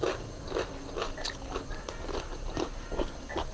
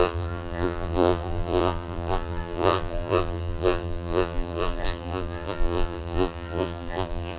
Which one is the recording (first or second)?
first